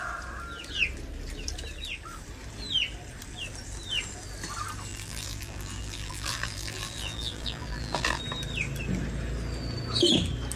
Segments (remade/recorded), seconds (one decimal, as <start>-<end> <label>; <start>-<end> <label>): 0.0-4.9 recorded; 4.9-8.2 remade; 8.2-10.6 recorded

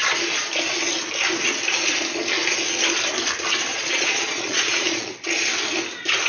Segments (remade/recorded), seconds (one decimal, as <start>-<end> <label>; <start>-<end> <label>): 0.0-3.7 recorded; 3.7-5.1 remade; 5.1-6.3 recorded

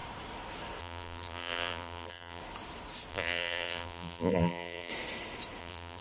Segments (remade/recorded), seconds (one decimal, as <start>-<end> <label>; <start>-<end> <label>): 0.0-0.8 recorded; 0.8-2.4 remade; 2.4-3.1 recorded; 3.1-4.9 remade; 4.9-5.6 recorded; 5.6-6.0 remade

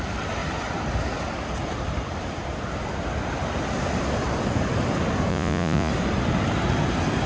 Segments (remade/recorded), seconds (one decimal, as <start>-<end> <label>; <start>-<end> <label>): 0.0-5.3 recorded; 5.3-5.9 remade; 5.9-7.3 recorded

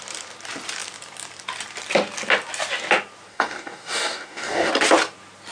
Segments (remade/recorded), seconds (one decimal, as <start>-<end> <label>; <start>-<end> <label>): 0.0-3.3 recorded; 3.3-4.7 remade; 4.7-5.5 recorded

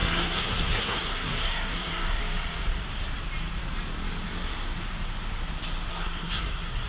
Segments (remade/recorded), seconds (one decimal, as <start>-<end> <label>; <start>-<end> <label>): 0.0-2.2 remade; 2.2-5.9 recorded; 5.9-6.9 remade